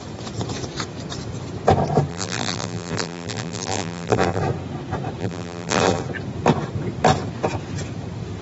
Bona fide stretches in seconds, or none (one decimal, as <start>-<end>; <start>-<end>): 0.0-2.1; 4.4-5.2; 6.0-8.4